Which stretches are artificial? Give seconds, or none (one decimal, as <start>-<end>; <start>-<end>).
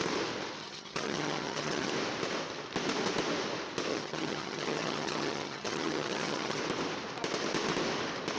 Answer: 0.6-1.9; 3.9-6.6